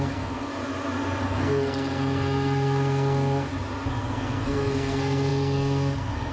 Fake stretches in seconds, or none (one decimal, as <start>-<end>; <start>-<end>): 0.0-0.5; 1.2-3.5; 4.0-6.3